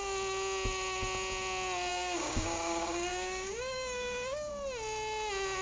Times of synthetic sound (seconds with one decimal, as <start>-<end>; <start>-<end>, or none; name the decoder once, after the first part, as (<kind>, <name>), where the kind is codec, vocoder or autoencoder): 1.9-4.5 (codec, DAC)

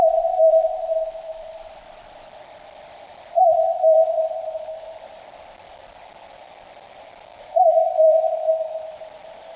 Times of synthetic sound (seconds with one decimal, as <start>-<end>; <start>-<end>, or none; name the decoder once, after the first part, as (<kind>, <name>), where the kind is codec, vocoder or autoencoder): 7.3-7.9 (codec, DAC)